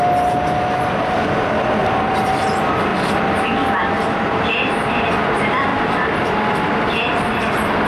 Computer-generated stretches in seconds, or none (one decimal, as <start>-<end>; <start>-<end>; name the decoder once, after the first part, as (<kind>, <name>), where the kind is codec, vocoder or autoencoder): 1.8-2.4 (vocoder, BigVGAN v2); 2.9-3.8; 5.7-7.4

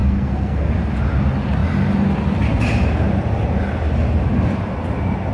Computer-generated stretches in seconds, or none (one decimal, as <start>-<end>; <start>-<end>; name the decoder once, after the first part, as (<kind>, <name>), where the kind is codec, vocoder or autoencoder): 0.0-0.7 (codec, SNAC)

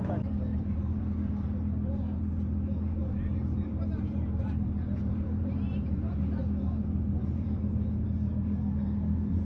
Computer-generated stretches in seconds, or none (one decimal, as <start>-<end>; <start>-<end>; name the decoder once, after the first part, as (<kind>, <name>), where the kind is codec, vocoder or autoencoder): 0.5-1.0 (vocoder, BigVGAN v2); 3.0-7.6

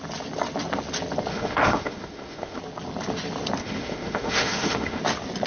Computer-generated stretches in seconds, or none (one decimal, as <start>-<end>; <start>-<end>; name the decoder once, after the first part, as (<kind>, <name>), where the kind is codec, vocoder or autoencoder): 1.3-2.6 (autoencoder, DAC-VAE); 3.6-5.0

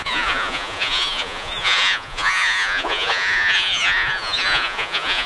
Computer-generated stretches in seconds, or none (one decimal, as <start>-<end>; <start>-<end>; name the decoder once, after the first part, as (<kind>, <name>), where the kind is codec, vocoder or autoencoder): 0.0-5.3 (vocoder, Vocos)

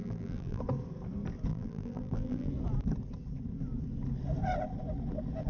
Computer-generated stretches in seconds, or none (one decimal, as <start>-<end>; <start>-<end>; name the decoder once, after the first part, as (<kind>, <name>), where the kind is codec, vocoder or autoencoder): 0.0-0.6 (vocoder, BigVGAN v2); 1.5-2.5